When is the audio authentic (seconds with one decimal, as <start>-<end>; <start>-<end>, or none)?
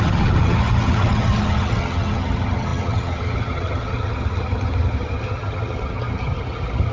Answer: none